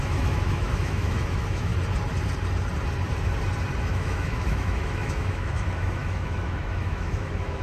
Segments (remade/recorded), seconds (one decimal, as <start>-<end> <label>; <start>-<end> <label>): 0.0-1.7 remade; 1.7-3.8 recorded; 3.8-7.6 remade